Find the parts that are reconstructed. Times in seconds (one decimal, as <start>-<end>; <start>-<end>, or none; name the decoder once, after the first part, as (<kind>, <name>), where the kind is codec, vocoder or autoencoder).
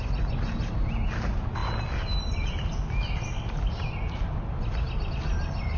1.6-5.1 (vocoder, BigVGAN v2)